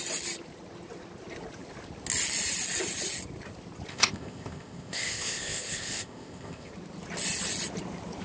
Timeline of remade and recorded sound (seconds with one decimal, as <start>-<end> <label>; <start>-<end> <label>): 0.0-3.9 recorded; 3.9-6.7 remade; 6.7-8.2 recorded

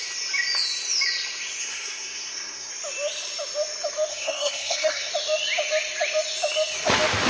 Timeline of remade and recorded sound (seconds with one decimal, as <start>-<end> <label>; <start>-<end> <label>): 0.0-1.6 recorded; 1.6-2.7 remade; 2.7-4.1 recorded; 4.1-5.1 remade; 5.1-7.3 recorded

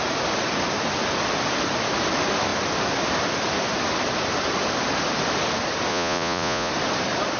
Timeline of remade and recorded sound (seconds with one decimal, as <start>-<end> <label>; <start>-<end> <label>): 0.0-5.9 recorded; 5.9-6.7 remade; 6.7-7.4 recorded

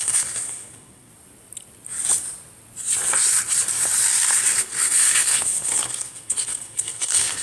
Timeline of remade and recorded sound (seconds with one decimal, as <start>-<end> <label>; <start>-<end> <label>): 0.0-1.1 remade; 1.1-4.6 recorded; 4.6-7.4 remade

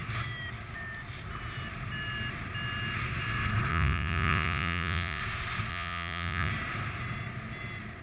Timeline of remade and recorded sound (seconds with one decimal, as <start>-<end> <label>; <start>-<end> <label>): 0.0-3.7 recorded; 3.7-5.2 remade; 5.2-5.7 recorded; 5.7-6.5 remade; 6.5-8.0 recorded

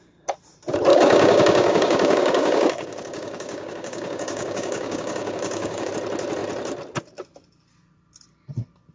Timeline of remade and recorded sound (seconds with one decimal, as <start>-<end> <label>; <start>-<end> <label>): 0.0-0.9 recorded; 0.9-5.9 remade; 5.9-8.9 recorded

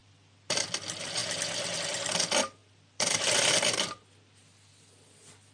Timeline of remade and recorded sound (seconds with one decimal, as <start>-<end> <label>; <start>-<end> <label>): 0.0-0.6 remade; 0.6-2.6 recorded; 2.6-3.2 remade; 3.2-5.5 recorded

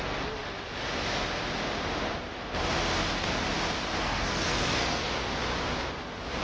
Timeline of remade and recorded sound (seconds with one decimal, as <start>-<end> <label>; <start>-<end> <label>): 0.0-4.0 recorded; 4.0-5.1 remade; 5.1-6.4 recorded